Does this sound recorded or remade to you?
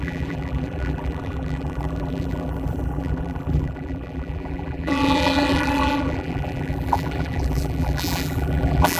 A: remade